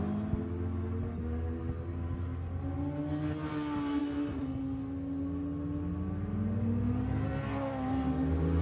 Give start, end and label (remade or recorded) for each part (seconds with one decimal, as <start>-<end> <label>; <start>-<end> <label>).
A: 0.0-8.6 recorded